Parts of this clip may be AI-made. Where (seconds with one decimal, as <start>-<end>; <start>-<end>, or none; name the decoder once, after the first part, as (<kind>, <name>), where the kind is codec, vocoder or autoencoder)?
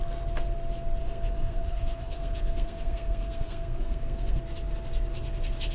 1.0-4.4 (codec, SNAC)